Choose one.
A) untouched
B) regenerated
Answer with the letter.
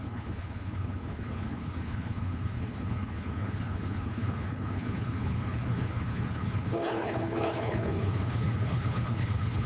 B